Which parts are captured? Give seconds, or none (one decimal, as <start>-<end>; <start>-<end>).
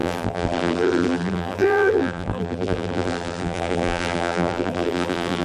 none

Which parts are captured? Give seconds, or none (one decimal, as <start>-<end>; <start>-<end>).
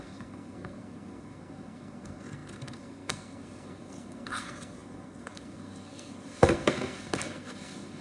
none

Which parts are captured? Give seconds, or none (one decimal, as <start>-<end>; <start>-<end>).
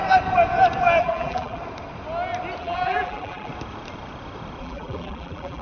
0.0-1.0; 1.6-2.6; 3.5-4.6